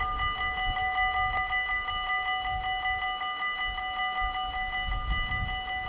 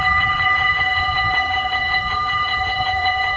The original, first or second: first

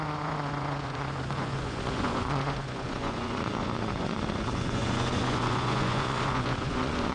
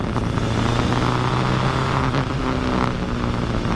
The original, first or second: second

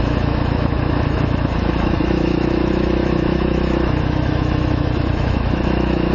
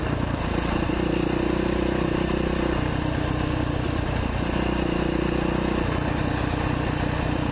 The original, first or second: second